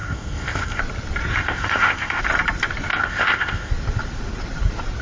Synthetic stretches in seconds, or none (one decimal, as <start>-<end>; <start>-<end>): 0.0-0.8; 1.3-2.2; 2.9-3.7